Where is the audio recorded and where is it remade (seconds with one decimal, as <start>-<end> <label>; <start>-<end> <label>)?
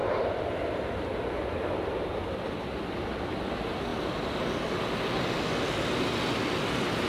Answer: 0.0-7.1 recorded